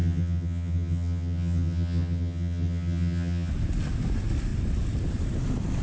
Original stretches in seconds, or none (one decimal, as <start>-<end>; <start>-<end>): 3.5-5.8